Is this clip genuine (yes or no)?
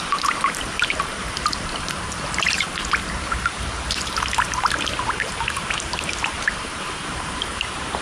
no